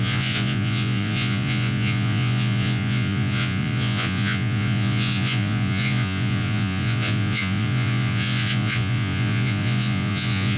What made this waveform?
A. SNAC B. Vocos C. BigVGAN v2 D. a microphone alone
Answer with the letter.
B